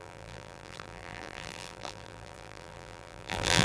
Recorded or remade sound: remade